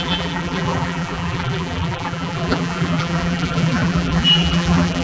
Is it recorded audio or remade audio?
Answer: remade